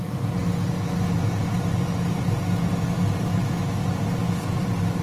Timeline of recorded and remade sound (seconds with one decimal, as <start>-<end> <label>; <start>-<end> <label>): 0.0-5.0 recorded